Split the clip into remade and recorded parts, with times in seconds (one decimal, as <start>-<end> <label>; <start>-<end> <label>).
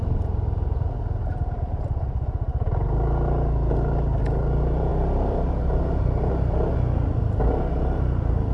0.0-4.9 recorded; 4.9-6.3 remade; 6.3-8.5 recorded